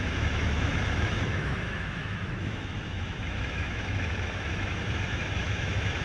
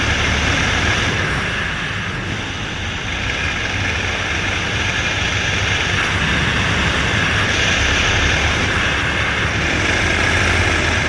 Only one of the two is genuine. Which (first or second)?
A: second